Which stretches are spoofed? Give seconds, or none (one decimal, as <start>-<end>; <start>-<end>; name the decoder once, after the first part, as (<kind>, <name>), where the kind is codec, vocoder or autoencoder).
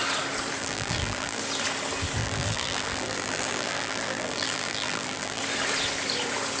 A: 0.6-1.4 (vocoder, BigVGAN v2); 2.2-5.4